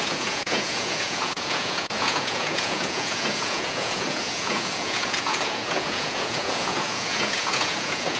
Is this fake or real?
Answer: fake